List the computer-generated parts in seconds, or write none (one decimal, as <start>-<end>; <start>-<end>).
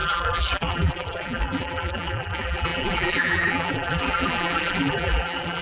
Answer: 0.0-5.6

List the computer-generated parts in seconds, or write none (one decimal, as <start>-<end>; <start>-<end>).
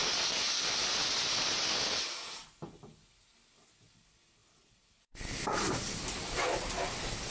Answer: 4.4-6.7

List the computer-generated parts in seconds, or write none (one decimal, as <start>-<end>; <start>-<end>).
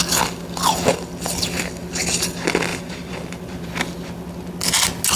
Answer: 2.7-3.7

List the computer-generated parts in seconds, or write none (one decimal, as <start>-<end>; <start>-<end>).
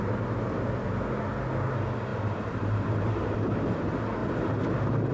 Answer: 2.1-3.6; 4.2-5.1